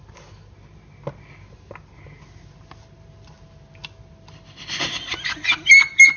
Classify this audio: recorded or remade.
recorded